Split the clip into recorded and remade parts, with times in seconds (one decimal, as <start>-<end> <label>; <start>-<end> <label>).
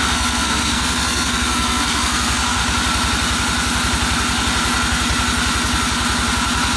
0.0-2.6 remade; 2.6-6.8 recorded